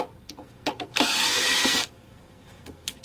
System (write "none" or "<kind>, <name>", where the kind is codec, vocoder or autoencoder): codec, SNAC